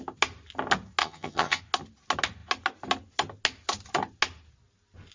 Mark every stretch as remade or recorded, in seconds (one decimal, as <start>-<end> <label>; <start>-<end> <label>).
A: 0.0-1.0 recorded; 1.0-1.6 remade; 1.6-5.1 recorded